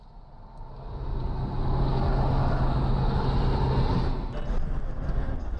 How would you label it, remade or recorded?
recorded